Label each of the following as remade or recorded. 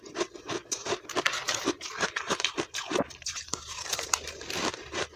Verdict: remade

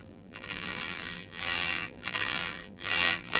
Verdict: remade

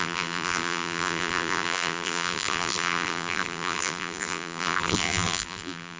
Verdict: remade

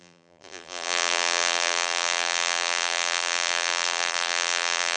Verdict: remade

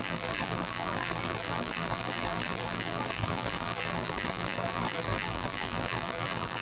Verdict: remade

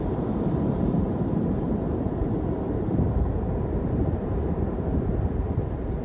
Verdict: remade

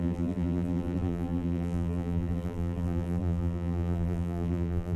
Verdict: remade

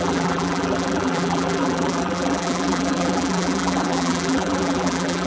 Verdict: remade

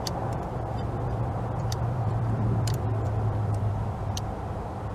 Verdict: remade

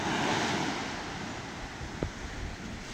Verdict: recorded